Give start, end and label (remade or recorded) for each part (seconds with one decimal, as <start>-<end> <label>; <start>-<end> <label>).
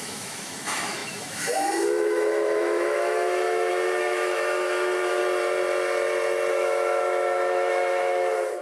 0.0-5.2 remade; 5.2-6.5 recorded; 6.5-8.6 remade